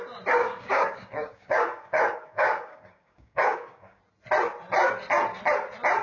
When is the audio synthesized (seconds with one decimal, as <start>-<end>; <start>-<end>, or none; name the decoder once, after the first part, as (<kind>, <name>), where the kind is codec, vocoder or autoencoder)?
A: 0.4-4.0 (codec, DAC)